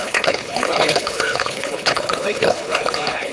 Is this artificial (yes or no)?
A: yes